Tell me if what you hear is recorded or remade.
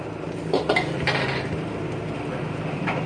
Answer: recorded